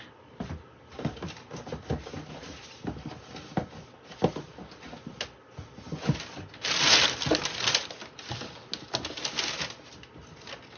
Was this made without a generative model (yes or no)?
yes